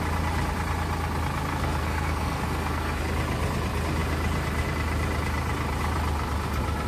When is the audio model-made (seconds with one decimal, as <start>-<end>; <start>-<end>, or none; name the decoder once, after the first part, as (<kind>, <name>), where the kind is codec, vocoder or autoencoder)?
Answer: 1.5-3.0 (codec, SNAC)